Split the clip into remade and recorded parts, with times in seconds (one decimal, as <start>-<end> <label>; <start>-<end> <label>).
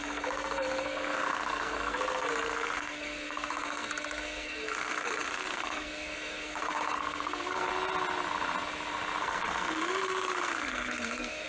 0.0-7.7 remade; 7.7-9.2 recorded; 9.2-11.5 remade